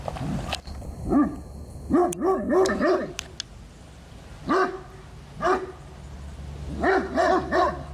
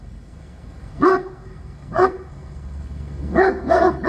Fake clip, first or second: second